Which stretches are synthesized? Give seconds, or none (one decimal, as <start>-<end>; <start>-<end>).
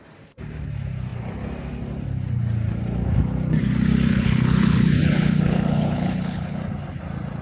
4.1-6.6